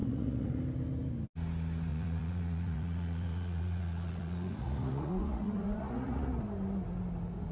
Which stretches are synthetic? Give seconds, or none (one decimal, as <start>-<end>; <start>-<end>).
0.0-0.6; 1.9-6.4